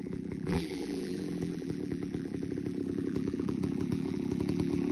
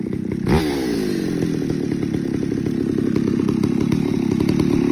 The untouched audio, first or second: second